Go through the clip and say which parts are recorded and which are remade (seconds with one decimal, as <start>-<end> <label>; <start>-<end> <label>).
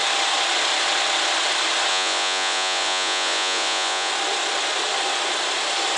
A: 0.0-1.9 recorded; 1.9-4.1 remade; 4.1-6.0 recorded